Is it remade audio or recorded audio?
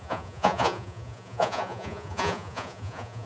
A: remade